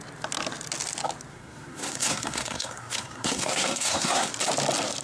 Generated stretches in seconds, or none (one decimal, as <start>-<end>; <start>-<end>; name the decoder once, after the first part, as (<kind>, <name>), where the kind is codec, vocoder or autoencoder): 1.3-4.3 (codec, SNAC)